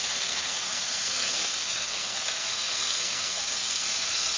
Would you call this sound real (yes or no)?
no